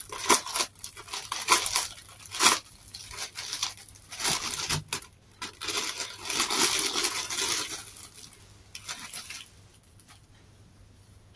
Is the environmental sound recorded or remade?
recorded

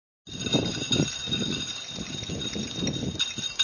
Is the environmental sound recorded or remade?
recorded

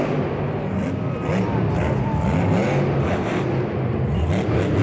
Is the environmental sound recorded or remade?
recorded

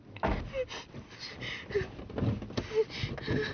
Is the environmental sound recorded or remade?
recorded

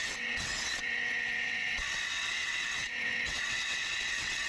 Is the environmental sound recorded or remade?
remade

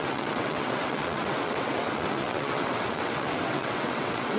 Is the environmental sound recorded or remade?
remade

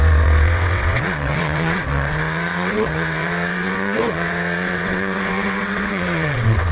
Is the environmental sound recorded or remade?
remade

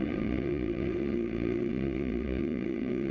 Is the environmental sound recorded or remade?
remade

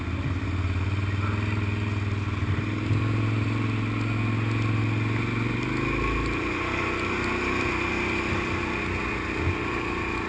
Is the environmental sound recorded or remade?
recorded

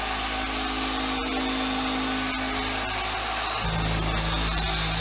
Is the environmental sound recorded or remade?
recorded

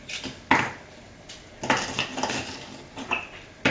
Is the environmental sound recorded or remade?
recorded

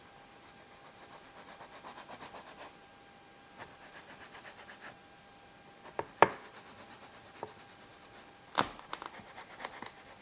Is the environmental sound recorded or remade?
recorded